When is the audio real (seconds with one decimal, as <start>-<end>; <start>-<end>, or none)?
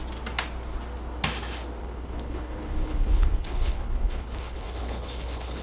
0.0-1.8